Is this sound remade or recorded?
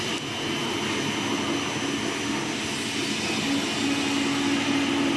recorded